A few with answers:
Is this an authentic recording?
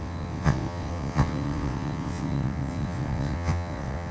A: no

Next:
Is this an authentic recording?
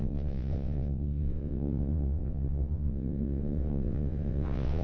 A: no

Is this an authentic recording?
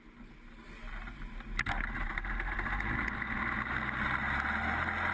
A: yes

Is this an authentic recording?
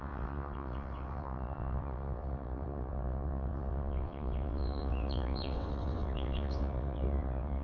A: no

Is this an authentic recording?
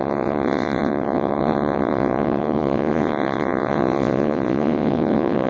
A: no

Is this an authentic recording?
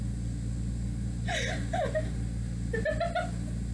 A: yes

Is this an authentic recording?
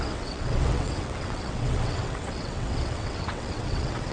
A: no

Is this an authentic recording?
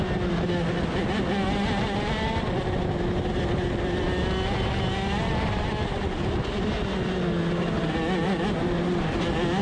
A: yes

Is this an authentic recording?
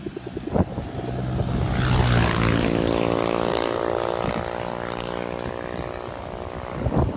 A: yes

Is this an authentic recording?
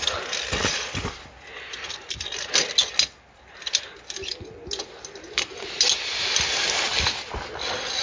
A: yes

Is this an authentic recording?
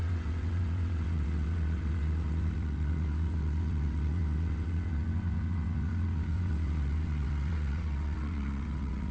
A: no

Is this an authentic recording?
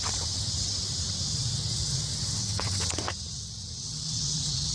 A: no